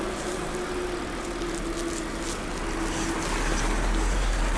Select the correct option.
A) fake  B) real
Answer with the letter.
B